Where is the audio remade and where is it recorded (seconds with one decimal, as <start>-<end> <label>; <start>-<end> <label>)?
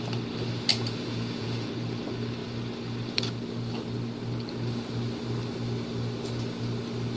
0.0-0.7 recorded; 0.7-1.7 remade; 1.7-7.2 recorded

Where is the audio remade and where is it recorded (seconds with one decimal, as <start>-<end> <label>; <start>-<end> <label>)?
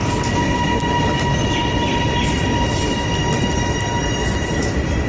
0.0-5.1 recorded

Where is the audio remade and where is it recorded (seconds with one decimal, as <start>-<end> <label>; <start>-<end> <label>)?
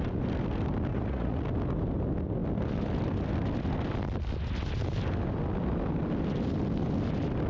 0.0-0.9 recorded; 0.9-1.4 remade; 1.4-7.5 recorded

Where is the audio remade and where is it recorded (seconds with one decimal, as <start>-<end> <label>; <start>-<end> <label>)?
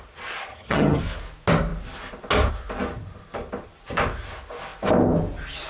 0.0-0.5 recorded; 0.5-1.0 remade; 1.0-5.7 recorded